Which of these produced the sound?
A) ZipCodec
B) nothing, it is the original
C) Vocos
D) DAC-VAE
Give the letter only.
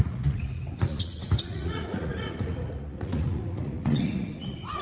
C